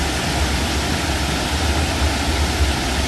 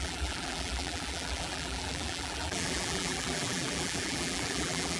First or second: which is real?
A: first